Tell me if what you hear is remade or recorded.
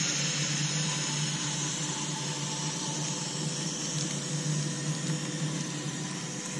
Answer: recorded